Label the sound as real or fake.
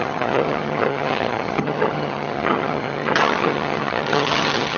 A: fake